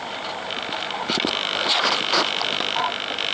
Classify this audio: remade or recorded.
recorded